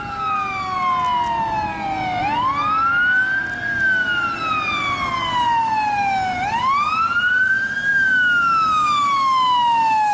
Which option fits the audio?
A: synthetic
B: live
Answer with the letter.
B